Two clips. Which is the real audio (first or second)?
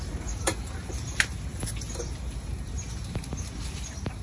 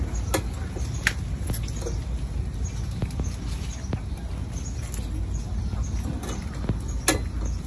second